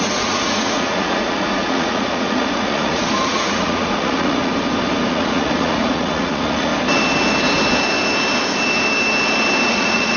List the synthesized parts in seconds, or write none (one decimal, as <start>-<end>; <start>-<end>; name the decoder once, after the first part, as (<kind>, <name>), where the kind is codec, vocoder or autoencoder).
0.0-4.5 (vocoder, Vocos); 5.1-6.7; 9.7-10.2